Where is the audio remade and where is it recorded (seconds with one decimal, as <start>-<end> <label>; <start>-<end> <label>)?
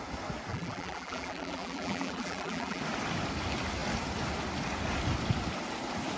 0.0-0.5 recorded; 0.5-2.8 remade; 2.8-6.2 recorded